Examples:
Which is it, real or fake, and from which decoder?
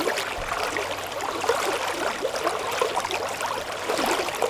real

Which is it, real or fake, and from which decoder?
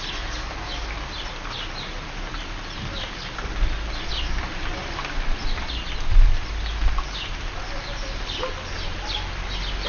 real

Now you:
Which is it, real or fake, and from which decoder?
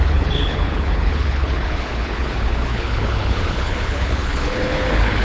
fake, codec, HILCodec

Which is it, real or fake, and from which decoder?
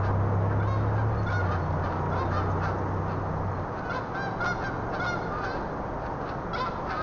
real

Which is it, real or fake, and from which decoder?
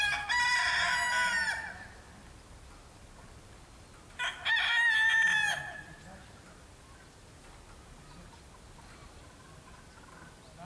real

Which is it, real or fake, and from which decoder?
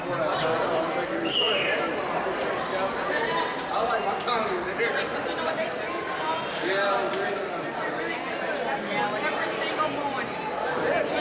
real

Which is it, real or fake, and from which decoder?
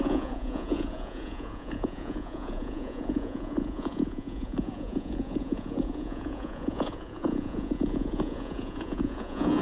fake, vocoder, Vocos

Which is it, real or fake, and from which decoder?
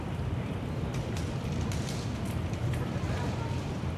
fake, vocoder, BigVGAN v2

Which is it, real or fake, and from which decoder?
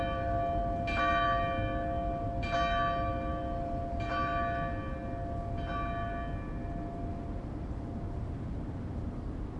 real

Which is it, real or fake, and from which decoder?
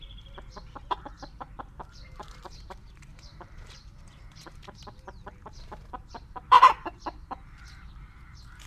fake, vocoder, BigVGAN v2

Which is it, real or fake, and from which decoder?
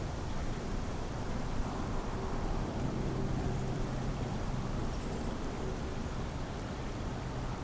fake, vocoder, BigVGAN v2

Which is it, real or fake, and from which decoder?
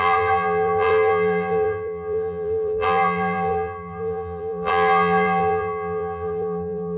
fake, vocoder, BigVGAN v2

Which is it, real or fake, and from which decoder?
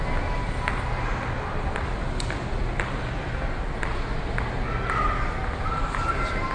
real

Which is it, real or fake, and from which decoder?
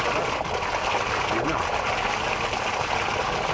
real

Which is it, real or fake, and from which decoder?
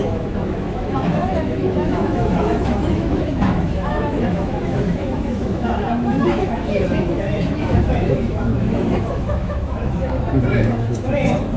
fake, autoencoder, DAC-VAE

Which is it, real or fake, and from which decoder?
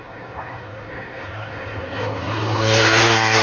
fake, codec, SNAC